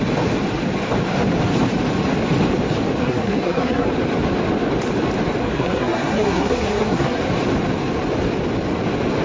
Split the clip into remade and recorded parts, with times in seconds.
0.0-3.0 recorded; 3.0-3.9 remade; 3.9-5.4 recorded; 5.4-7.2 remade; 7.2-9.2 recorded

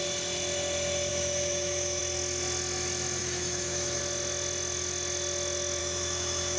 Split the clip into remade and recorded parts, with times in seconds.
0.0-1.1 recorded; 1.1-2.0 remade; 2.0-3.2 recorded; 3.2-4.0 remade; 4.0-5.8 recorded; 5.8-6.6 remade

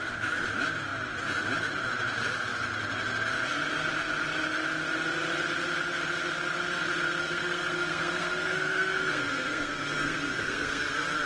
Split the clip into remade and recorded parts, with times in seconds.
0.0-7.2 recorded; 7.2-10.8 remade; 10.8-11.3 recorded

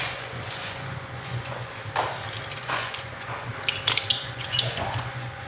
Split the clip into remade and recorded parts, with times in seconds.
0.0-1.8 remade; 1.8-2.6 recorded; 2.6-3.5 remade; 3.5-4.1 recorded; 4.1-5.5 remade

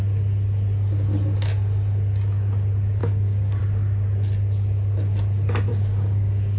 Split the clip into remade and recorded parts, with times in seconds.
0.0-3.0 recorded; 3.0-3.6 remade; 3.6-5.7 recorded; 5.7-6.6 remade

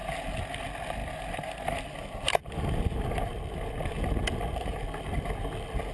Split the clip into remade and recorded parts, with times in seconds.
0.0-5.9 recorded

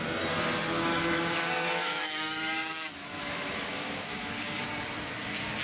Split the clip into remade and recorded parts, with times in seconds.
0.0-0.9 recorded; 0.9-4.3 remade; 4.3-5.6 recorded

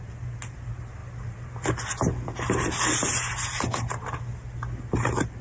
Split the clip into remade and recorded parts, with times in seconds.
0.0-5.4 recorded